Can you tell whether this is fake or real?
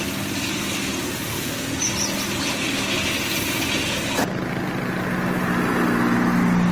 real